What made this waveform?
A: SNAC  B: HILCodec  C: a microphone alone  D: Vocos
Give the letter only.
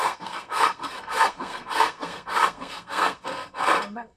A